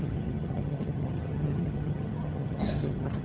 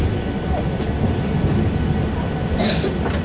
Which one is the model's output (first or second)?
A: first